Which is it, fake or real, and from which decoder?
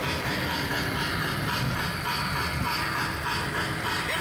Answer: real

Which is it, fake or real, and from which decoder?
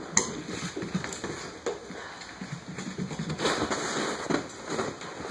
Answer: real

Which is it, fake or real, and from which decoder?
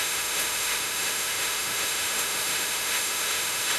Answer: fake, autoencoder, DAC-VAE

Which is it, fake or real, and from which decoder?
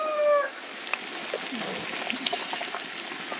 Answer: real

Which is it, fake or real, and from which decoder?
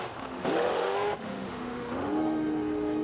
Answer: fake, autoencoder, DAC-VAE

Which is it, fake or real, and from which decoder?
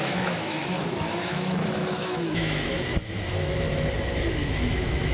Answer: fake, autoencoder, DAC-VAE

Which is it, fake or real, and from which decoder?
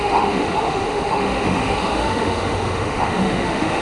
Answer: fake, autoencoder, DAC-VAE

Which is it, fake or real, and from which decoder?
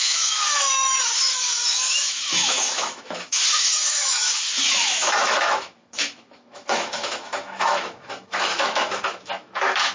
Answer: fake, autoencoder, DAC-VAE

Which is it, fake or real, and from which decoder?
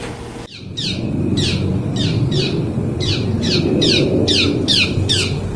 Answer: real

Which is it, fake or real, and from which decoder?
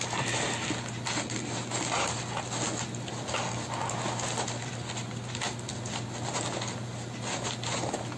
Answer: real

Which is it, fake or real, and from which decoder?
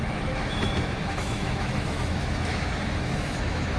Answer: fake, autoencoder, DAC-VAE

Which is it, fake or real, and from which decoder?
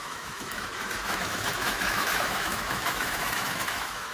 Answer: fake, autoencoder, DAC-VAE